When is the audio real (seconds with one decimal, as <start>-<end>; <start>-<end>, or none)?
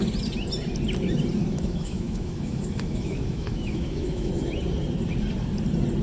0.0-1.4; 4.3-6.0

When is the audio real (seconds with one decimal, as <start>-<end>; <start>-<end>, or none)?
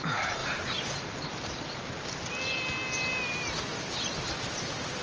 2.2-4.1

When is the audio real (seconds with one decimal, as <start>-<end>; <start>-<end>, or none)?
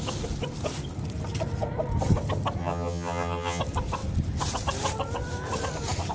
0.0-2.6; 3.6-6.1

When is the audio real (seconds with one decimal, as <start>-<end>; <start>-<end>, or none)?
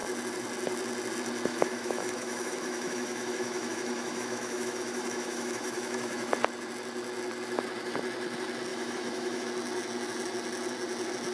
0.0-1.5; 6.3-8.7; 9.5-11.3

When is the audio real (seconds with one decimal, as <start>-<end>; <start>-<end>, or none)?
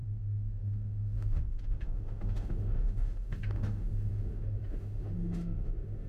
none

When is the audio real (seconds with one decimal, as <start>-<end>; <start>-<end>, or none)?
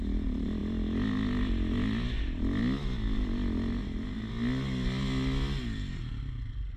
0.0-6.8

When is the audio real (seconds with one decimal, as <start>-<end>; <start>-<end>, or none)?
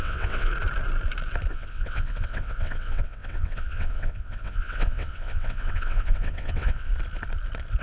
0.5-1.5; 6.9-7.8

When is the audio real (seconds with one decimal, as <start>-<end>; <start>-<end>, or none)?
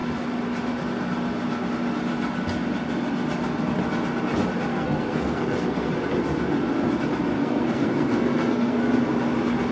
0.0-4.7; 5.9-7.3; 8.8-9.7